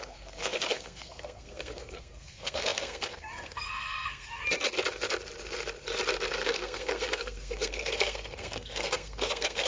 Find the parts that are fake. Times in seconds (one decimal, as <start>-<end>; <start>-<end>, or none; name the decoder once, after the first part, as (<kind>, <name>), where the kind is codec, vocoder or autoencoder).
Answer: 0.0-4.4 (codec, SNAC); 6.3-9.7

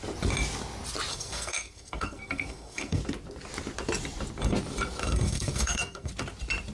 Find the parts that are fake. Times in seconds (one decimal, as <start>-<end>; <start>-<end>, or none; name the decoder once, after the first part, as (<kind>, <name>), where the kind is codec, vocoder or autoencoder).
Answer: 1.1-3.0 (codec, SNAC); 5.0-6.1

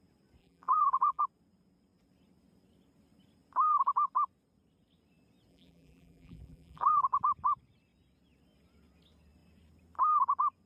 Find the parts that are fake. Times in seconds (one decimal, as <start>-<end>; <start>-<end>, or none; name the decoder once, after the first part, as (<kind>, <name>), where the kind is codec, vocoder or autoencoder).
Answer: 0.4-1.2 (vocoder, BigVGAN v2); 5.5-6.9